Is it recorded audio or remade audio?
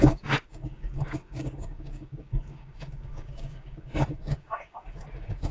remade